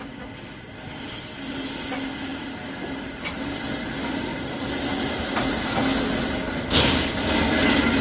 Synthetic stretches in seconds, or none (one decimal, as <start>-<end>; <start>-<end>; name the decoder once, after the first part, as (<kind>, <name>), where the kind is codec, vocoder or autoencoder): none